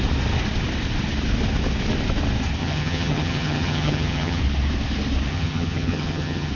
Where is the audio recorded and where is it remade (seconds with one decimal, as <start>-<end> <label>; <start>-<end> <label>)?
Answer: 0.0-2.6 recorded; 2.6-4.4 remade; 4.4-5.3 recorded; 5.3-6.5 remade